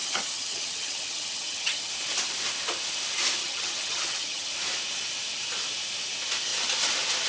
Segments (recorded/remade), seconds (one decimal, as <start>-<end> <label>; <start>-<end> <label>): 0.0-1.9 remade; 1.9-3.4 recorded; 3.4-4.5 remade; 4.5-7.3 recorded